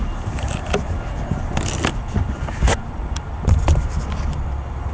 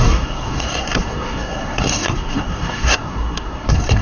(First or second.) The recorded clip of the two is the first